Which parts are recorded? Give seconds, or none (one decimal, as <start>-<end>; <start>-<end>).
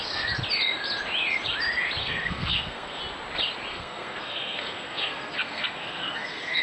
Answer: 0.0-2.0; 3.0-3.7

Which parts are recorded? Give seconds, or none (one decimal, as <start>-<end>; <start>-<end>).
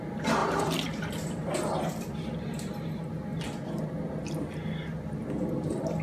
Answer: 0.0-0.4; 1.7-6.0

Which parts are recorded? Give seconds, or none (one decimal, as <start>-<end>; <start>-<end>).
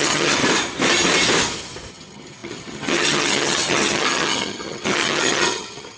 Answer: 0.4-1.9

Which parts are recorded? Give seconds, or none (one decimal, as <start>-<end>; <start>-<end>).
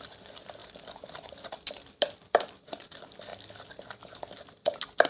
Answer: 0.0-5.1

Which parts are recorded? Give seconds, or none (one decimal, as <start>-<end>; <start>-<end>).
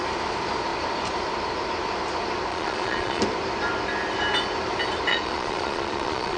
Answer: 0.0-2.5; 3.2-5.1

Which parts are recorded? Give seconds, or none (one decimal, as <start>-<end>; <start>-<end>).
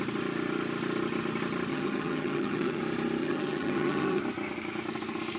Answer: 0.0-1.7; 2.8-3.2; 4.2-5.4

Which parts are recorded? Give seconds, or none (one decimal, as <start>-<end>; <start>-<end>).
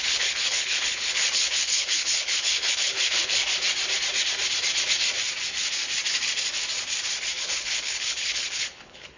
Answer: 3.4-7.4